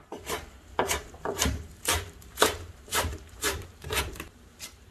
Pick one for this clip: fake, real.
fake